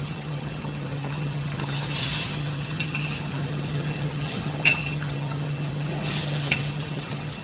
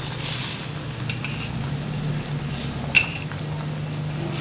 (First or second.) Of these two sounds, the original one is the second